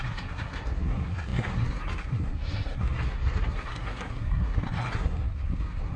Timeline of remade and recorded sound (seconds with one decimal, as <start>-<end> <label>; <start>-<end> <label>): 0.0-6.0 remade